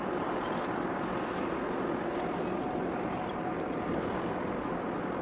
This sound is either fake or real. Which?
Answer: real